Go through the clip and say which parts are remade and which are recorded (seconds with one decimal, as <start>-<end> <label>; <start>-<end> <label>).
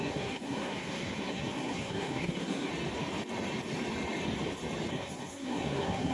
0.0-2.7 remade; 2.7-4.9 recorded; 4.9-6.1 remade